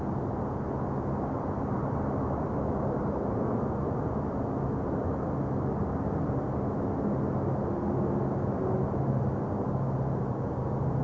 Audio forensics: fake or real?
real